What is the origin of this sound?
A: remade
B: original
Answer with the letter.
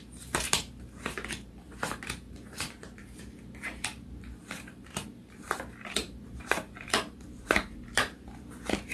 A